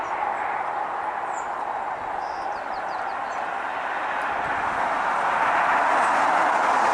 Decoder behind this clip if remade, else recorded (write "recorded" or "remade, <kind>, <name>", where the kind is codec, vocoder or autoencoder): recorded